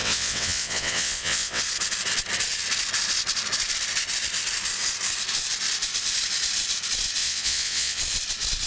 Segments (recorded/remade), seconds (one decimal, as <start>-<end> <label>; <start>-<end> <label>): 0.0-1.6 remade; 1.6-7.2 recorded; 7.2-8.0 remade; 8.0-8.7 recorded